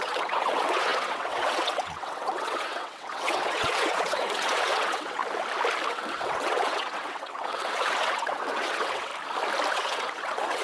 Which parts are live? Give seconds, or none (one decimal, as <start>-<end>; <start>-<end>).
5.2-5.9; 9.1-9.7